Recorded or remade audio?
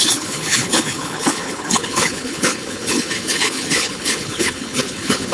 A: remade